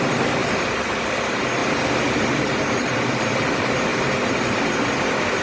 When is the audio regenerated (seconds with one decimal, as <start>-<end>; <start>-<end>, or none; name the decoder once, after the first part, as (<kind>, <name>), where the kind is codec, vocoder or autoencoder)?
none